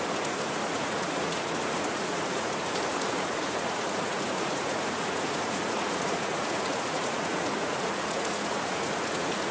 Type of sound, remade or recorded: remade